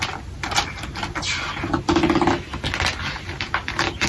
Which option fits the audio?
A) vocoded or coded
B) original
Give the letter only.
B